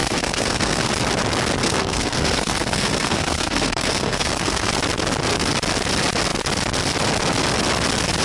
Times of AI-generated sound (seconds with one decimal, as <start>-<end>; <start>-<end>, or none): 0.0-0.9; 1.6-4.7